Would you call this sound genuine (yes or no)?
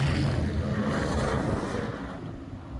yes